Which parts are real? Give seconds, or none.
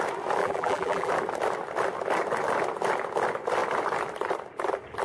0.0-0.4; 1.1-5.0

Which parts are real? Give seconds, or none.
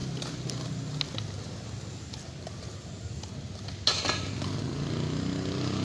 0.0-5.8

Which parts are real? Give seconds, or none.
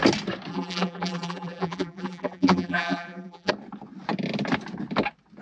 0.0-0.5; 3.5-5.4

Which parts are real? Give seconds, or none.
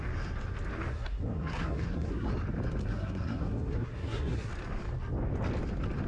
0.0-0.9; 2.3-2.8; 4.5-6.1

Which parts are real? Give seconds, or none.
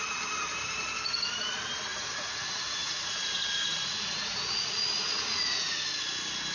0.0-1.9; 5.8-6.5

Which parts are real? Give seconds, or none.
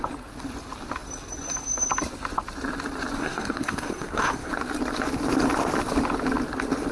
0.0-3.2; 4.5-6.9